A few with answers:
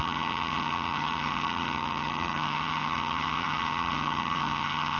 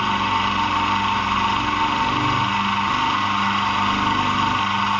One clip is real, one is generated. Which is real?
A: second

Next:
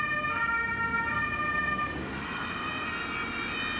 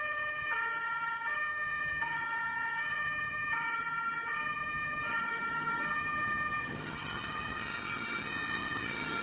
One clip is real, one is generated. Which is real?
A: first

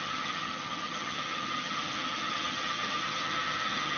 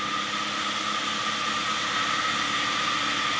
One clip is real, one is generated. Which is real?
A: second